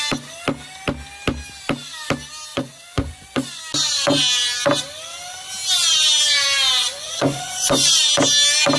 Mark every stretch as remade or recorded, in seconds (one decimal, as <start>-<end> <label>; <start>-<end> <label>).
0.0-2.5 recorded; 2.5-3.6 remade; 3.6-6.8 recorded; 6.8-8.0 remade; 8.0-8.8 recorded